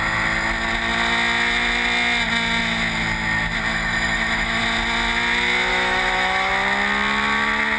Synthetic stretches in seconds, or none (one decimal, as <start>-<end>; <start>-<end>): 3.7-4.6; 5.7-6.5